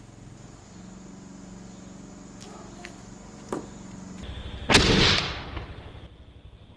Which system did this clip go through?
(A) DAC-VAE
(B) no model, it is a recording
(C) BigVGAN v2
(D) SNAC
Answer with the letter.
B